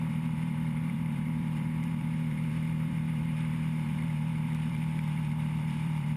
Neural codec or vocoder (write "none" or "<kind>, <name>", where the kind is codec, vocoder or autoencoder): vocoder, BigVGAN v2